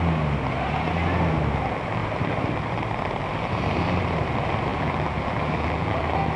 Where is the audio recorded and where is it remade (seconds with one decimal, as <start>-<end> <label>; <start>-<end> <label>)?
0.0-4.7 recorded; 4.7-6.0 remade; 6.0-6.4 recorded